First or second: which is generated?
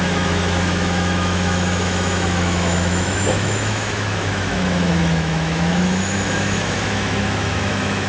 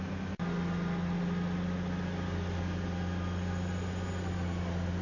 first